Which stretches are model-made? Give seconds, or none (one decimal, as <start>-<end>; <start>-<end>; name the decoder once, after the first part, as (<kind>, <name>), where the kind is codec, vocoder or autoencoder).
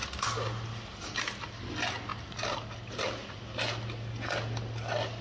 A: none